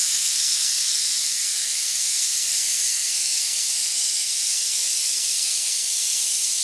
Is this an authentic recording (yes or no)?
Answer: no